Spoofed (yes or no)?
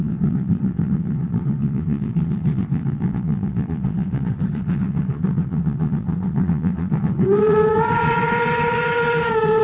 yes